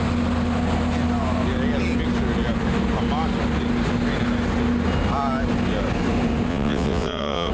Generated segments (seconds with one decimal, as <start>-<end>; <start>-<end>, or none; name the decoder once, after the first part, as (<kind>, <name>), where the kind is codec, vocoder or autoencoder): 6.5-7.5 (vocoder, WaveNeXt)